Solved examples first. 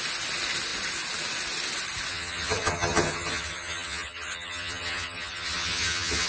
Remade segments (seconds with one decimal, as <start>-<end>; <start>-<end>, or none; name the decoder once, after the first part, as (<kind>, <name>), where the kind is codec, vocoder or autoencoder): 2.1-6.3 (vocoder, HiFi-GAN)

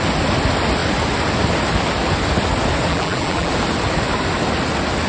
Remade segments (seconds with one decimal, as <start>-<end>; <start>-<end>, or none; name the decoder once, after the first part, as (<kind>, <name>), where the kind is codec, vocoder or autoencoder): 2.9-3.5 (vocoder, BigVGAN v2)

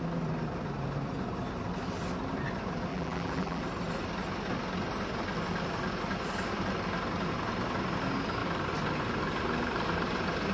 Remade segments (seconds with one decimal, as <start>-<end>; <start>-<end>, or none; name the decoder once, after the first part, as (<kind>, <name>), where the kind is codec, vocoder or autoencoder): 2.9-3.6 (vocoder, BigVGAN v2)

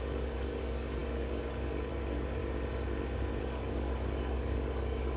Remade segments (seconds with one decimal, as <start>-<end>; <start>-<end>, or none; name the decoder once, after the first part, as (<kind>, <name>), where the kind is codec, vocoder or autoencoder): 0.0-2.4 (codec, DAC); 3.4-5.2

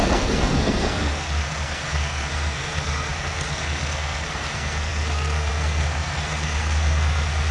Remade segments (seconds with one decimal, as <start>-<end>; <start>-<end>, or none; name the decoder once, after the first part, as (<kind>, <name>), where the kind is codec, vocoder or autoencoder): 0.0-7.5 (codec, SNAC)

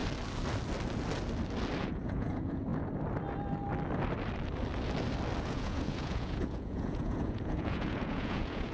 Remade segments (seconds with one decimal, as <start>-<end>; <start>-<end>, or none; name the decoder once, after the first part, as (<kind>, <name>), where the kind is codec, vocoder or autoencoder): 1.8-2.7 (vocoder, Vocos); 5.4-8.7